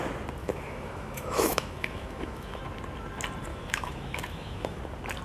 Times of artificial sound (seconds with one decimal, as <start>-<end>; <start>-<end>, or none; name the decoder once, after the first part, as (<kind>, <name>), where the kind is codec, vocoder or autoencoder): 0.4-2.6 (autoencoder, DAC-VAE); 3.5-4.8